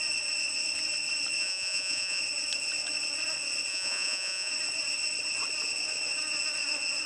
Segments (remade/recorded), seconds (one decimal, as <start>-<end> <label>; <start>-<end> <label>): 0.0-1.4 recorded; 1.4-2.2 remade; 2.2-3.7 recorded; 3.7-4.5 remade; 4.5-7.1 recorded